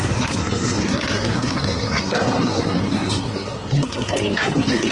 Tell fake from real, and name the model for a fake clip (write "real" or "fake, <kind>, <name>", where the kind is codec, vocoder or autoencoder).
fake, codec, SNAC